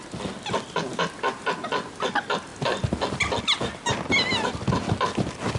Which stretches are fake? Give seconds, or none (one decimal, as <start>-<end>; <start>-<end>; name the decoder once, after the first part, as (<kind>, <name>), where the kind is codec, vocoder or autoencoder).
none